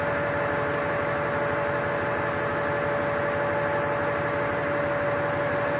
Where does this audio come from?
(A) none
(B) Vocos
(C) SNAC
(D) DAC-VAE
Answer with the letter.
A